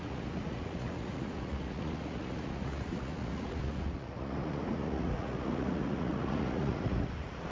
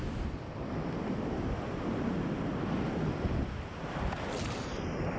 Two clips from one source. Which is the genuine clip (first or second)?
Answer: second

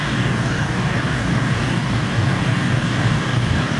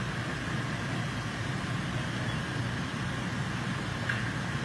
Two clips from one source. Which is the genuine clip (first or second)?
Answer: second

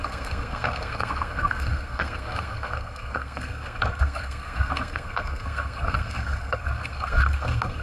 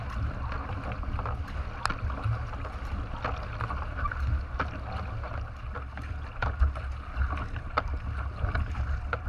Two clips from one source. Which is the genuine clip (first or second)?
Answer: second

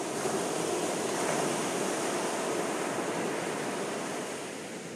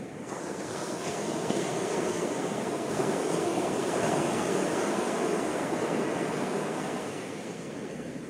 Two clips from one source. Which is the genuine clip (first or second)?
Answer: first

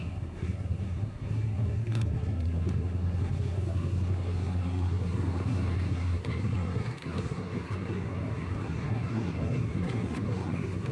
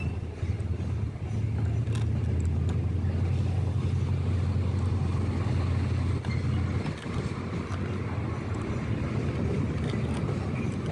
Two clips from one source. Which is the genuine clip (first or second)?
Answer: second